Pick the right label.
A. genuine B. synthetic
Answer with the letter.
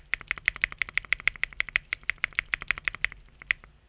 A